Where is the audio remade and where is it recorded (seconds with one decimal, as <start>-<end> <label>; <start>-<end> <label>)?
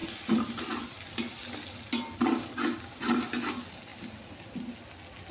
0.0-5.3 recorded